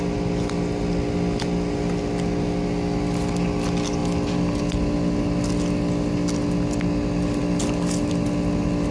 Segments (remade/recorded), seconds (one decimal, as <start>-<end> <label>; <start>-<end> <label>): 0.0-8.9 recorded